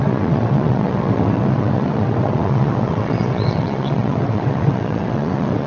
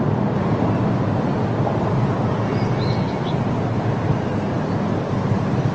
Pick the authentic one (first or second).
second